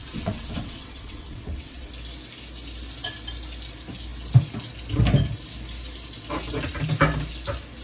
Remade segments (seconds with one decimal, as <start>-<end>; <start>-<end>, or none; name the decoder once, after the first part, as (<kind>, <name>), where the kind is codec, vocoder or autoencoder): 0.0-1.9 (vocoder, WaveNeXt)